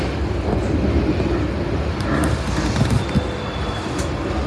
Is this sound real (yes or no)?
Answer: yes